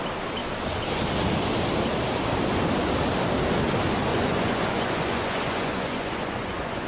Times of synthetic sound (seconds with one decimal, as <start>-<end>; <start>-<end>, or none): 4.1-6.9

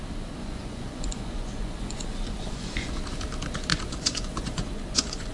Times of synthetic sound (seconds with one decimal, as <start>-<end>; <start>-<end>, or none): 0.4-2.9; 3.7-5.3

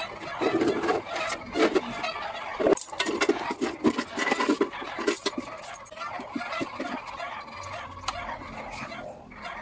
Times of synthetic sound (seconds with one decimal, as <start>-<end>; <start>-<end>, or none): none

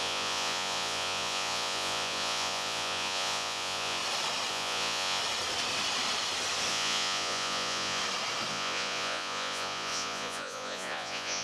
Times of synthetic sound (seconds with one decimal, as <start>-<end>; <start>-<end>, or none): 0.0-4.0; 4.5-5.2; 6.7-8.0; 8.5-11.4

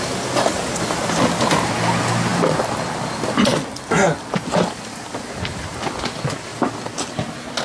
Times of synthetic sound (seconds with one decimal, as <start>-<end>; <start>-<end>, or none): none

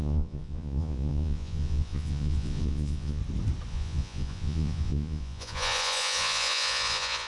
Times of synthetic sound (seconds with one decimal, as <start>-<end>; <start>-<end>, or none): 0.0-3.2; 3.7-7.3

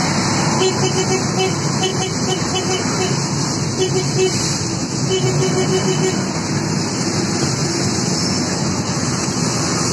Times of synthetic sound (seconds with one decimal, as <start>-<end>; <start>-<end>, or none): 4.8-5.5; 7.6-9.9

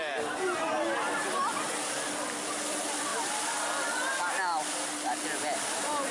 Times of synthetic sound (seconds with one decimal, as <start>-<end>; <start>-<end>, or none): none